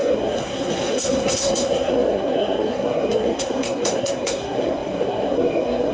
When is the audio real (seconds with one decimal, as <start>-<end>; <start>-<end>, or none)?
none